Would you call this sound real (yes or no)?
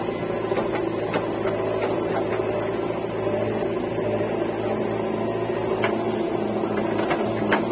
yes